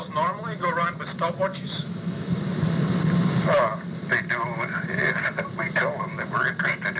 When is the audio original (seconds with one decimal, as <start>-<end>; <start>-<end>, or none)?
0.0-1.5; 2.3-7.0